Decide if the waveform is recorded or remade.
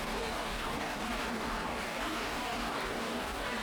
remade